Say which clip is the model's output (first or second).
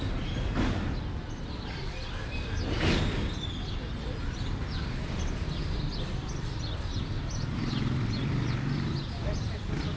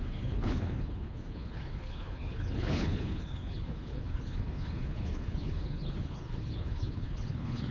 second